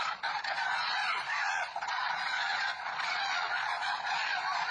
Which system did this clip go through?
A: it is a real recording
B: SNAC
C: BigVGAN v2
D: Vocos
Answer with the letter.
D